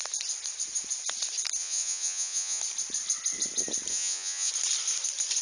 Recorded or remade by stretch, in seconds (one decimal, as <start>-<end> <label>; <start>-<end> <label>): 0.0-1.6 recorded; 1.6-2.6 remade; 2.6-3.9 recorded; 3.9-4.5 remade; 4.5-5.4 recorded